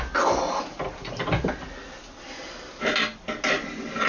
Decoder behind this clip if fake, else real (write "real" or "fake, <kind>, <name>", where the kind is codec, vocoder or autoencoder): real